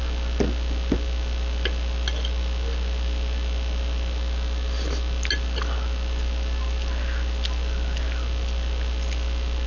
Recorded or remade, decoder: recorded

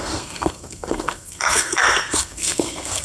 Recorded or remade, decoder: remade, codec, SNAC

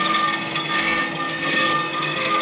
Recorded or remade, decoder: remade, codec, SNAC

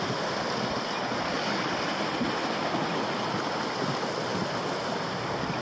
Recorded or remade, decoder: recorded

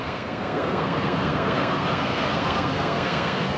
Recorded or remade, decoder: remade, codec, SNAC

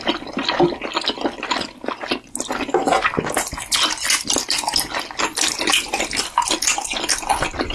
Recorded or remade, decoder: recorded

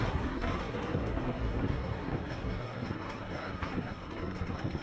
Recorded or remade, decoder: remade, codec, SNAC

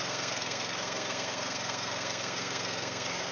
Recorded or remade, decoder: remade, codec, SNAC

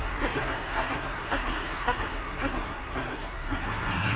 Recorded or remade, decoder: remade, codec, SNAC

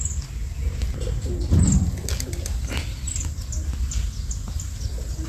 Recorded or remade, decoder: recorded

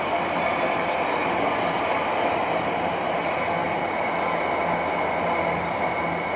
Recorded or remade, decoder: recorded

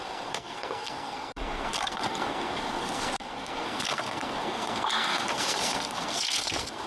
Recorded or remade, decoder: remade, codec, SNAC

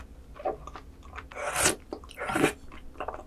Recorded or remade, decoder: recorded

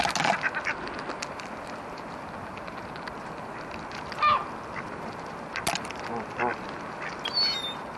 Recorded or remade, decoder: recorded